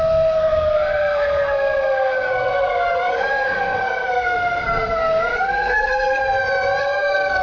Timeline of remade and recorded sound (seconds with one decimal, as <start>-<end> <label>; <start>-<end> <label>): 0.0-6.2 remade; 6.2-6.8 recorded; 6.8-7.4 remade